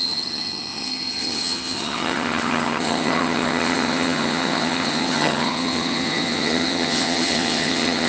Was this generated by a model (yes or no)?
yes